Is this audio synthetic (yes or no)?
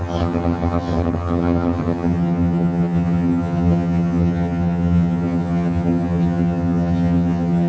yes